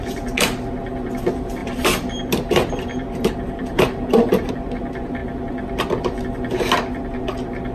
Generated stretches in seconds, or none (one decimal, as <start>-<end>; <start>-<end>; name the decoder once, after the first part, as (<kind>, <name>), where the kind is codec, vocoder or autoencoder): 1.6-4.5 (vocoder, BigVGAN v2)